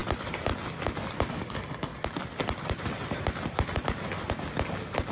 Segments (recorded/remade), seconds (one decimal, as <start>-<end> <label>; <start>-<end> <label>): 0.0-1.3 recorded; 1.3-1.9 remade; 1.9-5.1 recorded